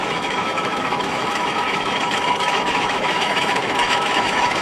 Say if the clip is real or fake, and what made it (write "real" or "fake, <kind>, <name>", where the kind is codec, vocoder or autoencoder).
fake, autoencoder, DAC-VAE